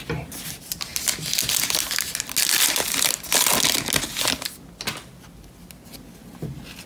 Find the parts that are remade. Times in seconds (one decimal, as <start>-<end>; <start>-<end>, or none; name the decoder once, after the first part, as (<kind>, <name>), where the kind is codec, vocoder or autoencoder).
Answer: none